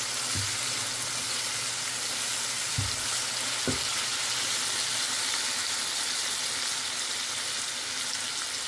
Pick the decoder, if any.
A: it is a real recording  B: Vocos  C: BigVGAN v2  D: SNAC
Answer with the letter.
A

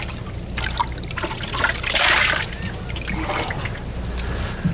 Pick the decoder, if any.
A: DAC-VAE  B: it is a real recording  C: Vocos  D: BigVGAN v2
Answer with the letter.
B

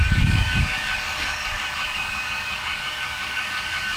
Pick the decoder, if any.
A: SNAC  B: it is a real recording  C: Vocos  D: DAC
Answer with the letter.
D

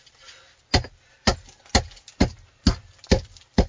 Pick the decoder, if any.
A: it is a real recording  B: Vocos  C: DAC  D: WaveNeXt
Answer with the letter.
A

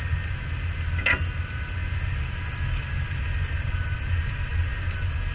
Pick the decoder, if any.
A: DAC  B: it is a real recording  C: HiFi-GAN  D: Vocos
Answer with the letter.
B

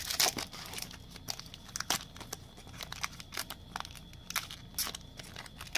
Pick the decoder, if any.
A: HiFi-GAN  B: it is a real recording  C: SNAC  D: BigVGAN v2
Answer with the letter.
B